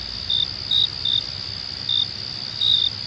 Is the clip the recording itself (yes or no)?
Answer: yes